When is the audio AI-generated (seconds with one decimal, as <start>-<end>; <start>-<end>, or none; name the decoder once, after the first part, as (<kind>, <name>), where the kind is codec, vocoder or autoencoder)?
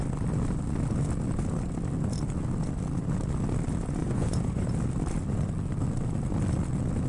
4.0-4.7 (vocoder, Vocos)